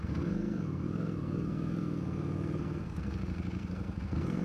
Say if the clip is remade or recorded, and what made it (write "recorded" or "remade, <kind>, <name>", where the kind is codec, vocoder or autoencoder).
remade, codec, SNAC